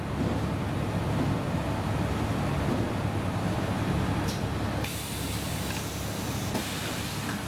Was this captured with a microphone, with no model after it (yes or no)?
yes